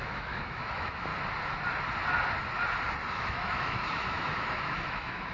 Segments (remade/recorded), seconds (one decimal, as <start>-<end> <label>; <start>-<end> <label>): 0.0-1.1 remade; 1.1-3.1 recorded; 3.1-5.3 remade

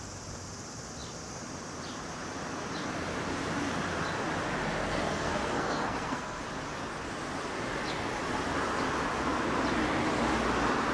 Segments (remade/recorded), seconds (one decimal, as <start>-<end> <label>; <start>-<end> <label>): 0.0-4.8 recorded; 4.8-6.4 remade; 6.4-10.9 recorded

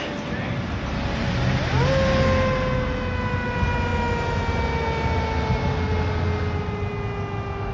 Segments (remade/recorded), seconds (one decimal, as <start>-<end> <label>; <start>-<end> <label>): 0.0-7.7 recorded

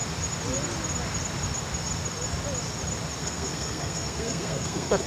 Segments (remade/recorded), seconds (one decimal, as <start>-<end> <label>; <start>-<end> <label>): 0.0-3.2 recorded; 3.2-5.1 remade

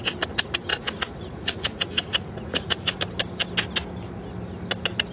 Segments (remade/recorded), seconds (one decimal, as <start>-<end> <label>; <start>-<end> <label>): 0.0-0.7 recorded; 0.7-3.0 remade; 3.0-5.1 recorded

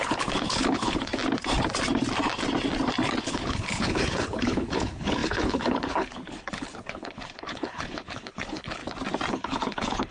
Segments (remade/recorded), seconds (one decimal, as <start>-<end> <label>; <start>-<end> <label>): 0.0-1.1 remade; 1.1-3.2 recorded; 3.2-8.8 remade; 8.8-9.3 recorded; 9.3-10.1 remade

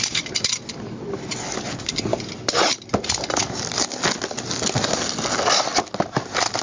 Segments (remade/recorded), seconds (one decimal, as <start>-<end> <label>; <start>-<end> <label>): 0.0-6.6 recorded

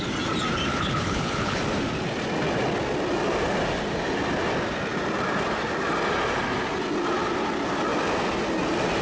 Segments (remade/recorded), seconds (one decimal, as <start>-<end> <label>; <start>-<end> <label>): 0.0-0.7 recorded; 0.7-1.6 remade; 1.6-9.0 recorded